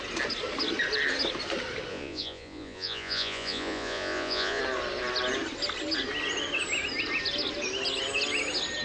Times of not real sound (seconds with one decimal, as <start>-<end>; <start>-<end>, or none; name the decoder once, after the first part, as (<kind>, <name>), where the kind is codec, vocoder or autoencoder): 1.9-4.6 (vocoder, Vocos)